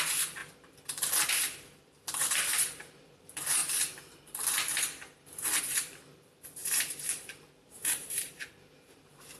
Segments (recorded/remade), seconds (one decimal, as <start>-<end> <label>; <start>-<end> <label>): 0.0-0.4 remade; 0.4-1.3 recorded; 1.3-3.6 remade; 3.6-5.6 recorded; 5.6-9.4 remade